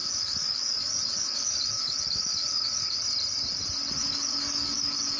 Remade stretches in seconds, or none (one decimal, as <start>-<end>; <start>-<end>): 0.0-3.0; 4.1-5.2